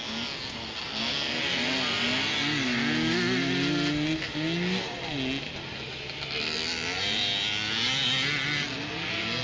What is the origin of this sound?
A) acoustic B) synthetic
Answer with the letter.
A